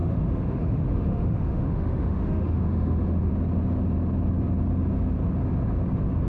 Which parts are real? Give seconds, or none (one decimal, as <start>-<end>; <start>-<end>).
3.3-6.3